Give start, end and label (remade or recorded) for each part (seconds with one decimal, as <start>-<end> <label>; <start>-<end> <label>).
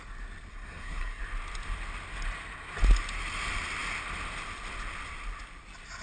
0.0-0.5 recorded; 0.5-1.2 remade; 1.2-6.0 recorded